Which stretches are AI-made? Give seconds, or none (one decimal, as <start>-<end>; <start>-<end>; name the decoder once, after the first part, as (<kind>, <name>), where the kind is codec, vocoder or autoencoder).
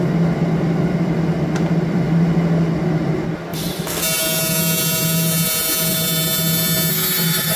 6.9-7.6 (autoencoder, DAC-VAE)